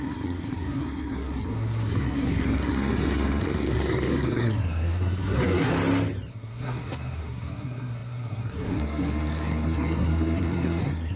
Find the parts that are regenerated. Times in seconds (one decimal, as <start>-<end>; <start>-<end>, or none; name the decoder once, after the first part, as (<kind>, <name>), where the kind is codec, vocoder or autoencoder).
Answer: 0.0-5.7 (codec, SNAC); 6.3-11.2